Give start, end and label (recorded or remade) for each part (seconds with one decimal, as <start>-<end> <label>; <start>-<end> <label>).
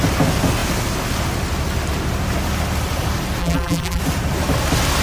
0.0-3.4 recorded; 3.4-4.0 remade; 4.0-5.0 recorded